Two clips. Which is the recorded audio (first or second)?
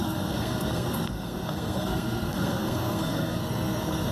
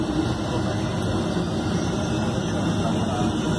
second